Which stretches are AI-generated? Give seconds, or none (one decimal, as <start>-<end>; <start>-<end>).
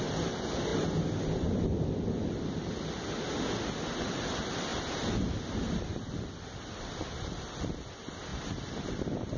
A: 4.7-6.3; 8.3-8.9